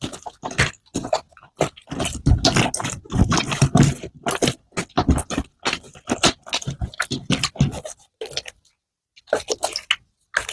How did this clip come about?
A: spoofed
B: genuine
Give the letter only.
B